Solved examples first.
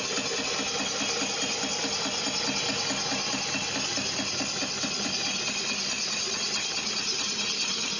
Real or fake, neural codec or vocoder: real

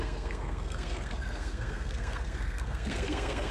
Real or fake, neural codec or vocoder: fake, codec, SNAC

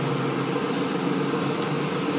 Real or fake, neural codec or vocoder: real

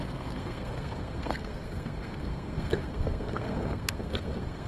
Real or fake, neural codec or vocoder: fake, codec, SNAC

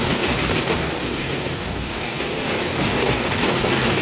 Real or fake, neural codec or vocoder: fake, codec, DAC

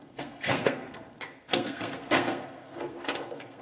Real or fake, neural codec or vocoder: fake, codec, SNAC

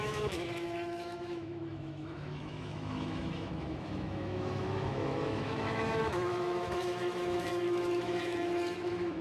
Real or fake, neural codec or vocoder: fake, autoencoder, DAC-VAE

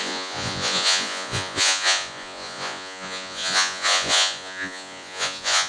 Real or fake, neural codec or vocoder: fake, vocoder, Vocos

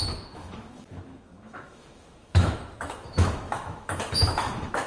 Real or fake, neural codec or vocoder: fake, autoencoder, DAC-VAE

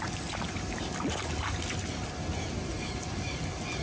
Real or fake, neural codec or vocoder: real